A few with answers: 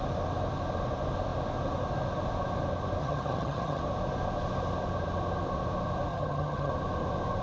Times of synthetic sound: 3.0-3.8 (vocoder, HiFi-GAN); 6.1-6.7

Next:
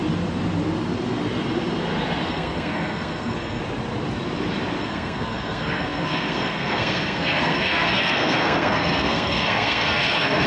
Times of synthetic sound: 2.3-3.6 (codec, SNAC); 4.8-10.5

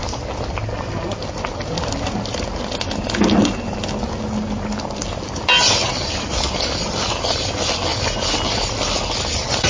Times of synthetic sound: none

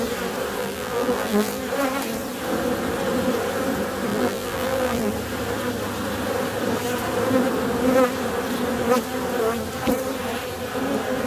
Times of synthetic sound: 0.6-1.6 (vocoder, BigVGAN v2); 4.1-5.1